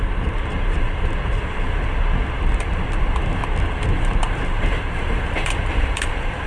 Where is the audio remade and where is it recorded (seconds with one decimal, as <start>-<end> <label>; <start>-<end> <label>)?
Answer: 0.0-3.4 remade; 3.4-4.2 recorded; 4.2-6.5 remade